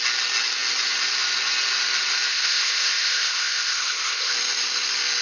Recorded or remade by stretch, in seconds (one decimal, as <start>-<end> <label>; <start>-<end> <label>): 0.0-2.3 recorded; 2.3-4.3 remade; 4.3-5.2 recorded